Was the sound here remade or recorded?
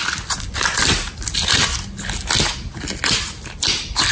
recorded